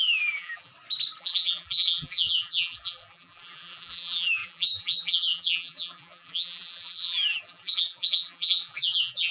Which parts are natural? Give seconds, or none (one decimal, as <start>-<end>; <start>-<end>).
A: 0.7-1.2